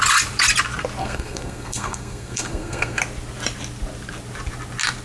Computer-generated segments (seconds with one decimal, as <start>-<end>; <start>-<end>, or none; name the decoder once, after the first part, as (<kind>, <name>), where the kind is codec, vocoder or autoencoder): 1.0-3.0 (codec, SNAC)